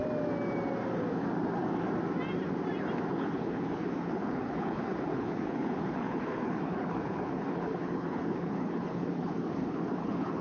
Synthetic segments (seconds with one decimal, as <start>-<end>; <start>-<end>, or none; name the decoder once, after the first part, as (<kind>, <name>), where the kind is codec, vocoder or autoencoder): 3.1-10.4 (codec, HILCodec)